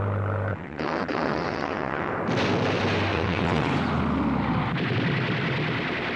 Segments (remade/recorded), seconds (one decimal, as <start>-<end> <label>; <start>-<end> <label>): 0.0-0.5 recorded; 0.5-2.1 remade; 2.1-3.1 recorded; 3.1-3.7 remade; 3.7-6.2 recorded